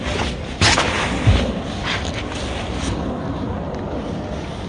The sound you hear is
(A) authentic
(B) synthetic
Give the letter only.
A